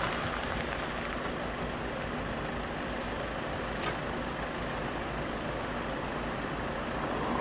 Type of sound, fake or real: real